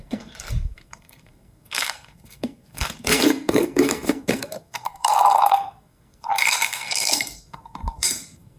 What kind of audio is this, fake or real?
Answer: fake